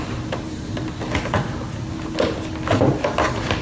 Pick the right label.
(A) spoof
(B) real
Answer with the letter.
B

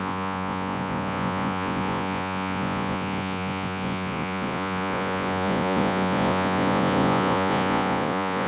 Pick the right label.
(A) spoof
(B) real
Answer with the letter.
A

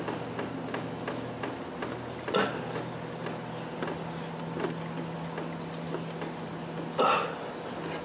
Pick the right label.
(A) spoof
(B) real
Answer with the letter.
B